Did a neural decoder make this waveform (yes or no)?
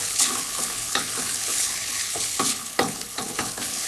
yes